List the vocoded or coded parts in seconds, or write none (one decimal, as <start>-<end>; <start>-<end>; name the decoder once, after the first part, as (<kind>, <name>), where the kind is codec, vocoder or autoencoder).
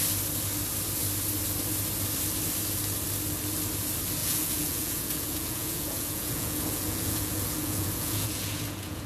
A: 4.2-9.1 (vocoder, Vocos)